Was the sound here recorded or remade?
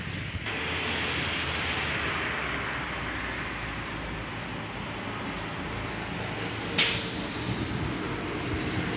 recorded